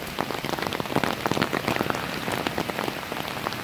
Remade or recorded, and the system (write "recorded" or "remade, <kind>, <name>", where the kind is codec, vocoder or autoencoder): recorded